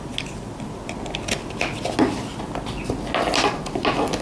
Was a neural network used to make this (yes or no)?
no